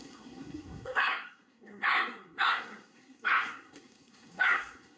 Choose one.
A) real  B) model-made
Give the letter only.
B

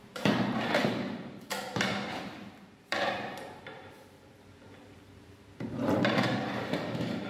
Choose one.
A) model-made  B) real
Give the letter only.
A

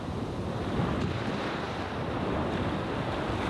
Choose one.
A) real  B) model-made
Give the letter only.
A